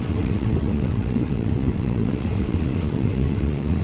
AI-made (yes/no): yes